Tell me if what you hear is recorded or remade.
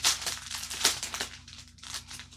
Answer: remade